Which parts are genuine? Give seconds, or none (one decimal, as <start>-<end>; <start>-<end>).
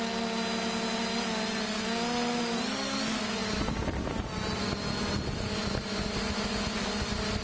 0.0-7.4